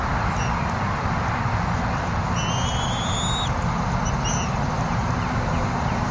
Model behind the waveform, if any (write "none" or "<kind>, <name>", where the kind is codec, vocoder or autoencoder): none